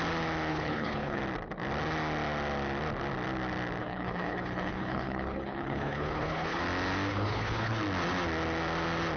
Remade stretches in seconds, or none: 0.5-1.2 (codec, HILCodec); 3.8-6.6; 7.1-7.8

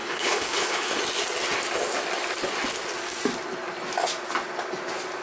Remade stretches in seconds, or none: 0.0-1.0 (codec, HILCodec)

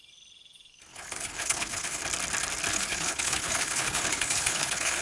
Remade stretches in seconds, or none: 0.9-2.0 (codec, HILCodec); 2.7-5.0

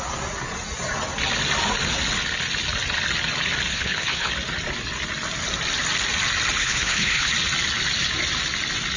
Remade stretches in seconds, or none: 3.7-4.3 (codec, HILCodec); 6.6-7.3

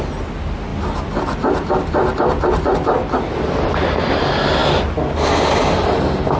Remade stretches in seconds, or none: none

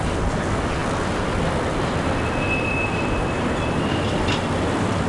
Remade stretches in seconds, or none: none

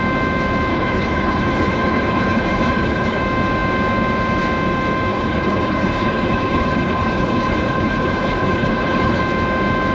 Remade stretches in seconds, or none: 0.7-3.2 (codec, HILCodec); 5.1-9.2

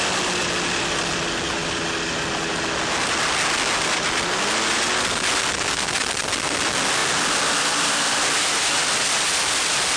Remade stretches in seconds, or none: none